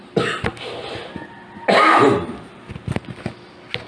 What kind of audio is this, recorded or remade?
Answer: recorded